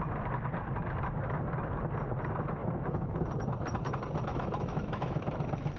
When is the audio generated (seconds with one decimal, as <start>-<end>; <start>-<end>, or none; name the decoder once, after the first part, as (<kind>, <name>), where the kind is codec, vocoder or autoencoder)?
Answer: 2.6-3.3 (autoencoder, DAC-VAE); 4.3-5.2